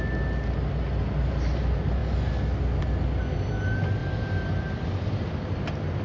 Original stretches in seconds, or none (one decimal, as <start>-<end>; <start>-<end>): 0.0-4.0; 5.3-6.0